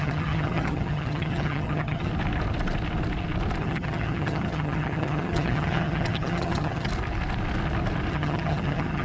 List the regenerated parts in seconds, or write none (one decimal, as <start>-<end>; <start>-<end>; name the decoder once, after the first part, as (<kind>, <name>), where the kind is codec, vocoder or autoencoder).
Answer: 0.0-2.1 (vocoder, HiFi-GAN); 3.6-6.9; 8.1-9.0